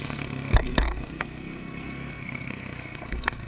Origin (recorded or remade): remade